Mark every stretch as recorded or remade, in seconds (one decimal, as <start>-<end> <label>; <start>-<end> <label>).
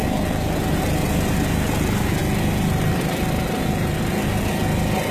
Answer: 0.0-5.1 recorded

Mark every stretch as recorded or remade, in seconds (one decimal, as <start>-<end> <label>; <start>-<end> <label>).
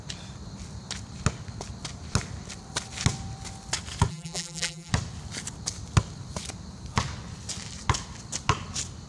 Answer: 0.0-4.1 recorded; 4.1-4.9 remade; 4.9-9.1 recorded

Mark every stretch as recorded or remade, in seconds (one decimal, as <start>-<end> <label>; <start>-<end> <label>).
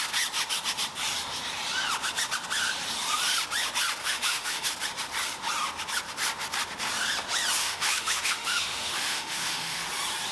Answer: 0.0-4.0 recorded; 4.0-4.7 remade; 4.7-7.6 recorded; 7.6-9.8 remade; 9.8-10.3 recorded